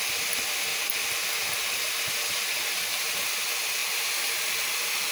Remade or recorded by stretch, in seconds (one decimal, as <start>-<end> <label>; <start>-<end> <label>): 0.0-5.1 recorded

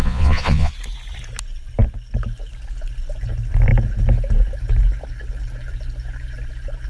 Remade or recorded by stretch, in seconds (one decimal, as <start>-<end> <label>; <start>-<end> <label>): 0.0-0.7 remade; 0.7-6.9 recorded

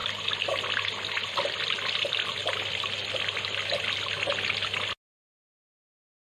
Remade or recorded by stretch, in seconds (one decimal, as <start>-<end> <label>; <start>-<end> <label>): 0.0-6.3 recorded

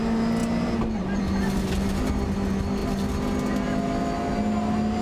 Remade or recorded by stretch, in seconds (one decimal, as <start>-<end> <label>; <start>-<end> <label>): 0.0-5.0 recorded

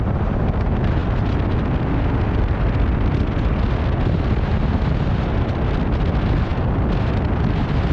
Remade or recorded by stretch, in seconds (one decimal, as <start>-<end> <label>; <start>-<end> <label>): 0.0-7.9 recorded

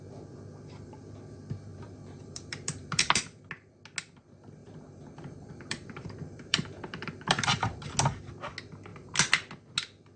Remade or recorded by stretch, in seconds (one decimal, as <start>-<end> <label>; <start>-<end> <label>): 0.0-1.7 recorded; 1.7-3.2 remade; 3.2-4.6 recorded; 4.6-7.9 remade; 7.9-10.2 recorded

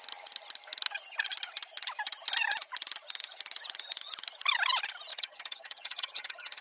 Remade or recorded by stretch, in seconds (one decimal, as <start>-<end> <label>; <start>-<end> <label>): 0.0-5.1 recorded; 5.1-6.6 remade